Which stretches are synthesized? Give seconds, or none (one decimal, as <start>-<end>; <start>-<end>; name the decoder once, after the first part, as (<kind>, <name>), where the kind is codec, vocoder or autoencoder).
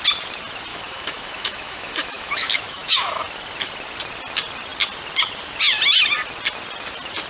0.7-3.2 (autoencoder, DAC-VAE)